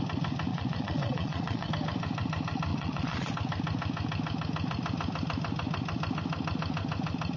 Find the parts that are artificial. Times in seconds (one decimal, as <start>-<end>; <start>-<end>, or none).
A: 0.5-1.7; 2.7-3.3